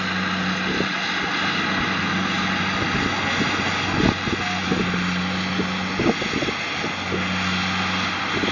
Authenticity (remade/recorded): recorded